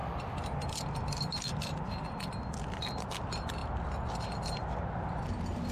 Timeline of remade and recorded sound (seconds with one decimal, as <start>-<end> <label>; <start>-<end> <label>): 0.0-5.7 recorded